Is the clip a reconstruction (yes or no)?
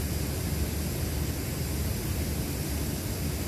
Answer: no